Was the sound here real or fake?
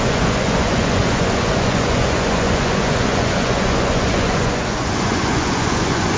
fake